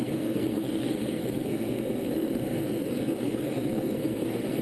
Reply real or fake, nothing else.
fake